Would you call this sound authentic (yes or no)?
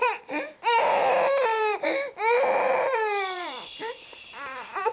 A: no